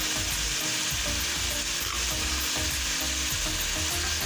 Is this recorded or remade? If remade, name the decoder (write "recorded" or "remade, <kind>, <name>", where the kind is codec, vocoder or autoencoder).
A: recorded